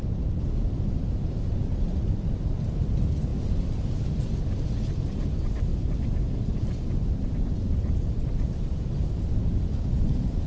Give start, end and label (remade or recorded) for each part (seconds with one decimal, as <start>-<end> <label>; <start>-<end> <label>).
0.0-5.7 remade; 5.7-6.4 recorded; 6.4-10.5 remade